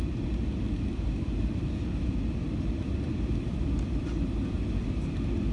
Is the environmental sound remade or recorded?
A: recorded